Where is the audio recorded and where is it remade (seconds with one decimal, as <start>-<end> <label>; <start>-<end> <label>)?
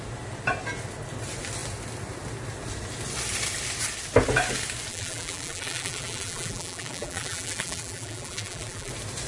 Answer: 0.0-4.9 recorded; 4.9-8.9 remade; 8.9-9.3 recorded